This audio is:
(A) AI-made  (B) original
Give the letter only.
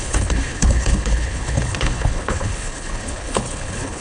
A